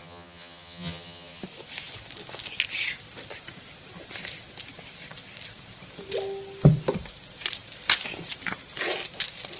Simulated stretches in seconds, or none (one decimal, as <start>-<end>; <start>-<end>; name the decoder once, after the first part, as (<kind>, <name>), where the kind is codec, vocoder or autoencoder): 0.0-1.4 (vocoder, HiFi-GAN)

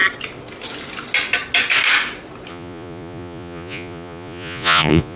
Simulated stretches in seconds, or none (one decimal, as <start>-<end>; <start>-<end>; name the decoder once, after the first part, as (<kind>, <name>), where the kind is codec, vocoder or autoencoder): 2.5-5.2 (vocoder, Vocos)

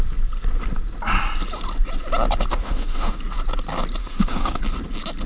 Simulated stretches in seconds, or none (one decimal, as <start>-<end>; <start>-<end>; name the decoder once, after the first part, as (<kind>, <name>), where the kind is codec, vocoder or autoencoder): 2.5-3.2 (autoencoder, DAC-VAE); 4.0-4.6

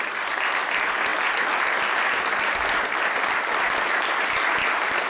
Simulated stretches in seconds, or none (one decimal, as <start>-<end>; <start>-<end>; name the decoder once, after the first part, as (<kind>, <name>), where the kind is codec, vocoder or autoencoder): none

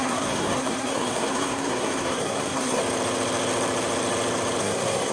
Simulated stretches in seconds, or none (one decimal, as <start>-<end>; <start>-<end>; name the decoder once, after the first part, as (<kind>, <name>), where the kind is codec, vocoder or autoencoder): 0.0-2.8 (codec, SNAC); 4.6-5.1

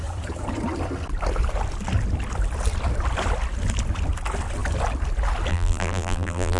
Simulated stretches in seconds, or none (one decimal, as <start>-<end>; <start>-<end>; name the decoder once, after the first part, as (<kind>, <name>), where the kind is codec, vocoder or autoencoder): 5.5-6.6 (vocoder, BigVGAN v2)